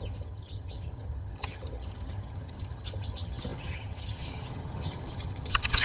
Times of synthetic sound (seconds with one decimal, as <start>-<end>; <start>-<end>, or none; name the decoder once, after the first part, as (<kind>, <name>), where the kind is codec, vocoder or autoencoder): 0.0-5.8 (vocoder, HiFi-GAN)